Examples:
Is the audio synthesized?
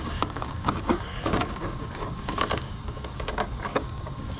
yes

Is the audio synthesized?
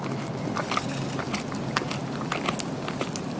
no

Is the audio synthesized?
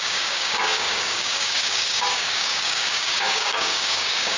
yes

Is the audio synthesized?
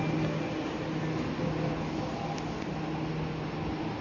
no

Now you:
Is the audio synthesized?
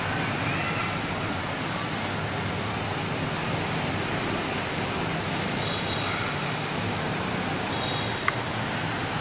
no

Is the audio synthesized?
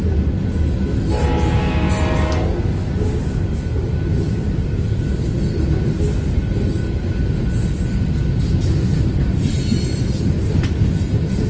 no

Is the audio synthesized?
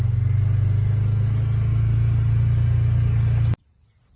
no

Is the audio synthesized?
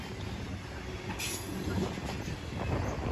no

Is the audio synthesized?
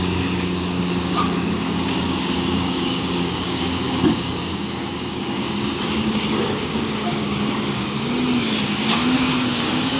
yes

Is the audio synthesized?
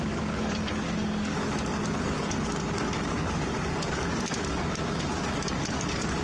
yes